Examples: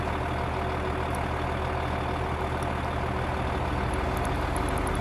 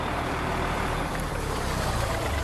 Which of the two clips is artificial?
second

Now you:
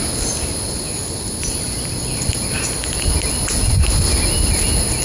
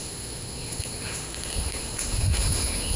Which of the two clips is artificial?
second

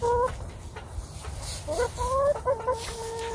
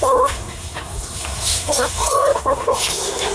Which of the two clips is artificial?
second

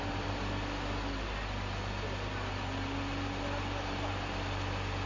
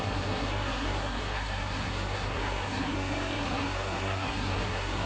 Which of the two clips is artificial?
second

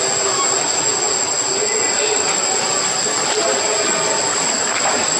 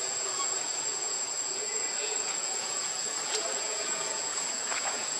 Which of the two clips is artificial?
second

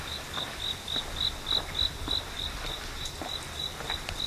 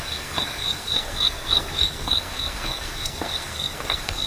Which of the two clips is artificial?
second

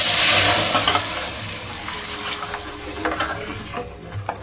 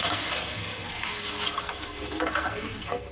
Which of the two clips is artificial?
second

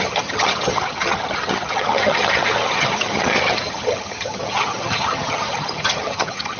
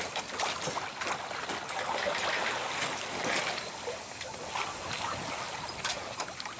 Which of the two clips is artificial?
first